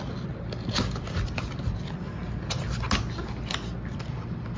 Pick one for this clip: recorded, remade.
recorded